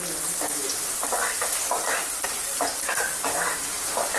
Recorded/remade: recorded